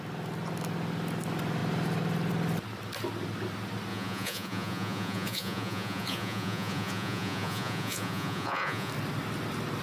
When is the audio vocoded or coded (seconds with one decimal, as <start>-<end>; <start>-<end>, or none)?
3.9-8.9